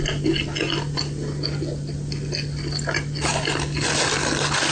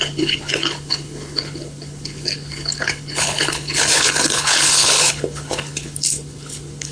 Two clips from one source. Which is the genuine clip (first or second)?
first